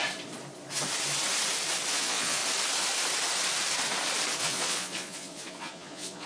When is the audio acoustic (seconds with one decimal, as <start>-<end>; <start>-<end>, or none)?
0.0-1.9; 2.4-4.4